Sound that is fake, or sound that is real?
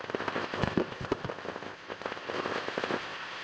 fake